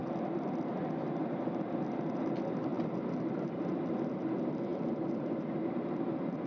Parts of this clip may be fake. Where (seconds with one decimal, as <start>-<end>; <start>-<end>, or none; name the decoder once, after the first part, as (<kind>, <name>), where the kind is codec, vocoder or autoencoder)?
0.0-6.5 (vocoder, BigVGAN v2)

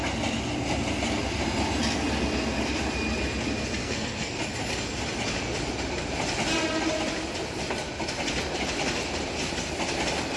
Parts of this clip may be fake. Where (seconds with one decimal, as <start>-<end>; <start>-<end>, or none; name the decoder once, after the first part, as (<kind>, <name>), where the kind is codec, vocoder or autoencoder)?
3.8-4.4 (codec, SNAC)

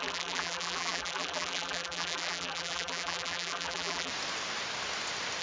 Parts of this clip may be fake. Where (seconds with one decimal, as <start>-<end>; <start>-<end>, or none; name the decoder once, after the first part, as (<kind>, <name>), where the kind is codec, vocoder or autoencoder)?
0.0-4.1 (vocoder, BigVGAN v2)

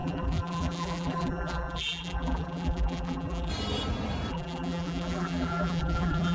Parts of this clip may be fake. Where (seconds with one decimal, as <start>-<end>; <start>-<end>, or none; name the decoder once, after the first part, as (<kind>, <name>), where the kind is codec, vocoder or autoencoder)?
0.0-3.5 (vocoder, BigVGAN v2); 4.3-6.3